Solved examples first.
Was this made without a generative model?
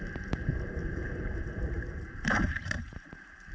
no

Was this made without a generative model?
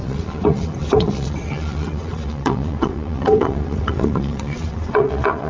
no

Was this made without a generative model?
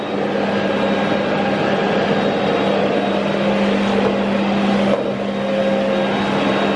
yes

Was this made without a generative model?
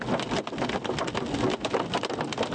no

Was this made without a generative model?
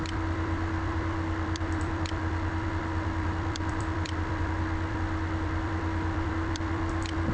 no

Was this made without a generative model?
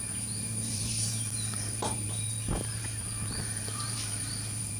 no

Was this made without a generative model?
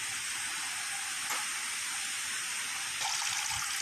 yes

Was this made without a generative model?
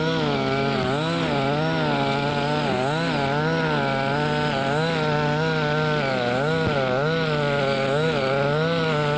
yes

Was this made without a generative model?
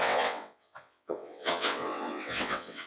no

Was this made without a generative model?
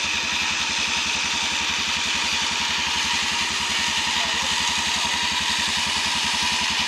yes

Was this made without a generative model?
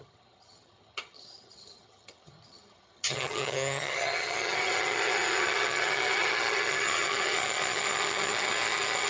no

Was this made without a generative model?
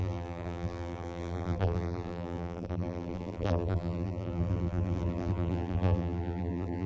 no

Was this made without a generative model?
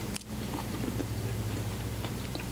no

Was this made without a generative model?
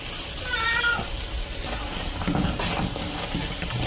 yes